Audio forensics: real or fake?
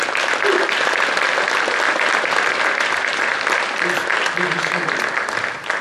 real